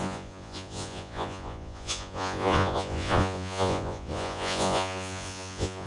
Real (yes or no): no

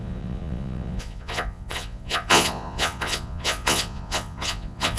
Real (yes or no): no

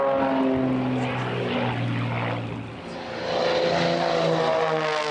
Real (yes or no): yes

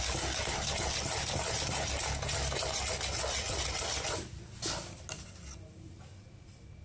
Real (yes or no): yes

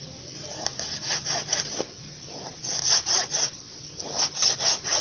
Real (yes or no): yes